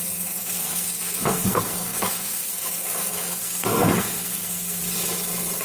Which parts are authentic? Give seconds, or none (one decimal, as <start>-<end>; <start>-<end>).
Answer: 4.8-5.6